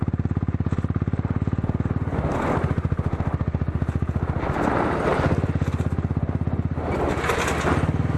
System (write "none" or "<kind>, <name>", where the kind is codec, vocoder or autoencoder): none